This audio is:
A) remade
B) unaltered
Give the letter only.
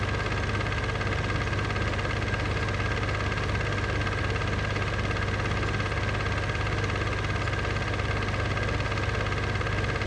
B